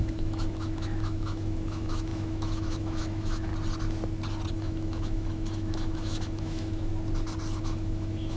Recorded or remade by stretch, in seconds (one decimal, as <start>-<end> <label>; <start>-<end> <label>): 0.0-3.5 remade; 3.5-4.5 recorded; 4.5-6.9 remade; 6.9-7.6 recorded; 7.6-8.4 remade